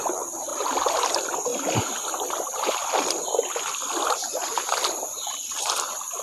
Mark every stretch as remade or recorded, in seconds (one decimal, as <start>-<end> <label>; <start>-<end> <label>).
0.0-0.5 remade; 0.5-1.1 recorded; 1.1-1.5 remade; 1.5-4.7 recorded; 4.7-6.2 remade